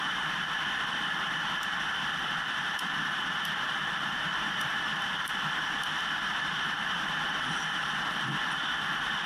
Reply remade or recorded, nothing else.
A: remade